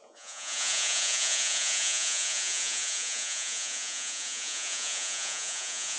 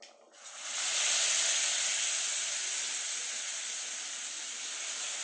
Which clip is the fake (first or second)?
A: first